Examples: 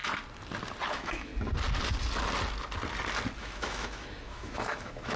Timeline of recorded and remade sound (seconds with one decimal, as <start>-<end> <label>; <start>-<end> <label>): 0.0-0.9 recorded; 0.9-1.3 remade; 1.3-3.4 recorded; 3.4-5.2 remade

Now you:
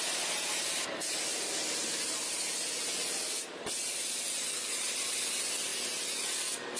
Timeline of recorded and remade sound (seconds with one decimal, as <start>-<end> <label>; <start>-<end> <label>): 0.0-6.8 recorded

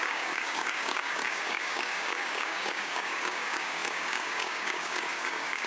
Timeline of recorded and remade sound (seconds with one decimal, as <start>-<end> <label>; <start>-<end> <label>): 0.0-5.7 remade